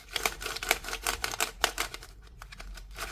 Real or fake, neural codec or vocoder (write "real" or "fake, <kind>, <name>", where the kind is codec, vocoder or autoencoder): fake, vocoder, BigVGAN v2